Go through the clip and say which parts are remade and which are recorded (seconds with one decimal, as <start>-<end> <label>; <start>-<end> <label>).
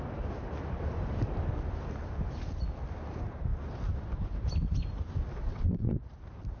0.0-5.4 recorded; 5.4-6.0 remade; 6.0-6.6 recorded